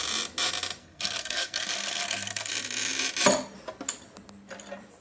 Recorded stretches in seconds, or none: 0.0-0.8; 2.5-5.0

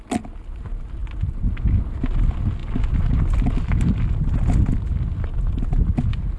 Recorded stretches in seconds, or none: 0.0-6.4

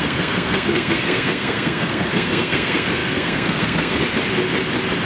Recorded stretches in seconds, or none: 4.0-5.1

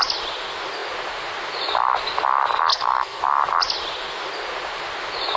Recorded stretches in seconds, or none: 0.0-2.7; 3.2-5.4

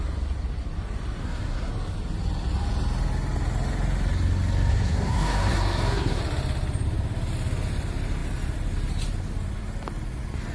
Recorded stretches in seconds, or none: 0.0-1.2; 1.7-4.7; 6.2-10.5